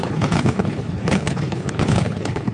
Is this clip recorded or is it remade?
remade